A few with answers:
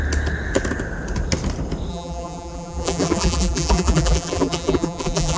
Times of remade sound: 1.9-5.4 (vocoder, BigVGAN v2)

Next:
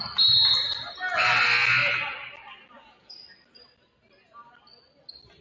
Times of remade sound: none

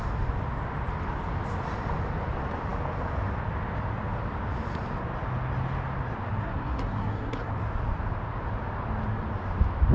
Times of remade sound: 6.4-7.5 (codec, SNAC)

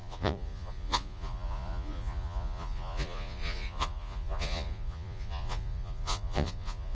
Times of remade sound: 0.0-6.9 (vocoder, Vocos)

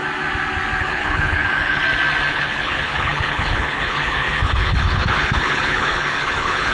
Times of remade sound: 0.8-1.8 (codec, HILCodec); 2.3-6.7

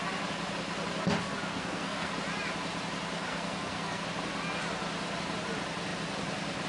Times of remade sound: 1.5-2.1 (codec, SNAC); 3.3-4.0

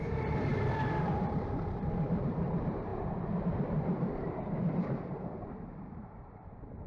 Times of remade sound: 0.0-6.9 (vocoder, BigVGAN v2)

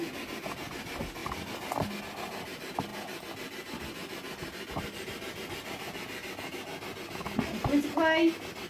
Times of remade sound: none